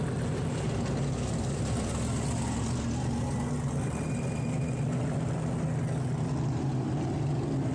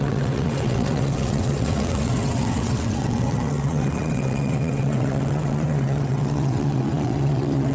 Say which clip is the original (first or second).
first